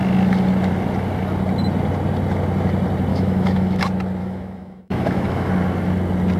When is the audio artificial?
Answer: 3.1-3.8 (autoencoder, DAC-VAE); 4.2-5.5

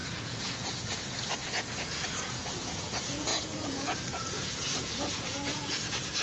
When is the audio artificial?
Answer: 0.0-6.2 (vocoder, Vocos)

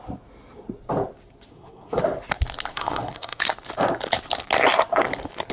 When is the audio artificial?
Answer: 1.5-2.0 (codec, SNAC); 2.7-3.4

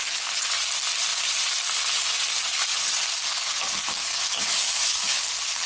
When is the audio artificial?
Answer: 0.0-0.5 (autoencoder, DAC-VAE); 4.0-5.2

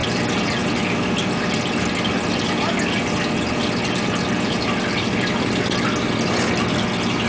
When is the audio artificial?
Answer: none

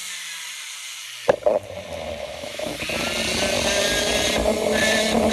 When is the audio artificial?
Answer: 2.2-2.7 (autoencoder, DAC-VAE)